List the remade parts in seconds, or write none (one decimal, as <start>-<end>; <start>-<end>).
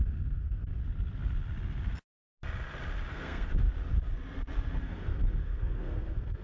0.0-0.8; 3.1-3.5; 4.8-6.4